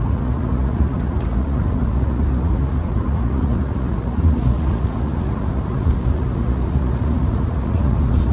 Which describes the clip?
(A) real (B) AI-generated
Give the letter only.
B